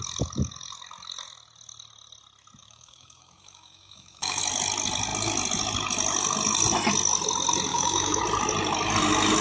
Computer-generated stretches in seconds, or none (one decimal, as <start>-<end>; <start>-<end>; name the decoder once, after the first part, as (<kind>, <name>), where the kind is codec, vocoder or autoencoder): 2.6-4.4 (autoencoder, DAC-VAE); 7.7-8.2